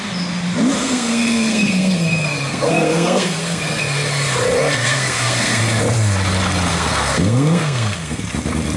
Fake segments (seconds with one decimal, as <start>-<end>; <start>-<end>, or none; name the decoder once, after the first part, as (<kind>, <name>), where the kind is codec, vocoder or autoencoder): 0.8-3.8 (codec, SNAC); 4.8-5.6; 6.7-8.2